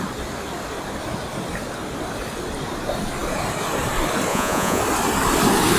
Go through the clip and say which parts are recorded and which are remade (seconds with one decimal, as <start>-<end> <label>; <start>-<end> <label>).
0.0-4.3 recorded; 4.3-4.8 remade; 4.8-5.8 recorded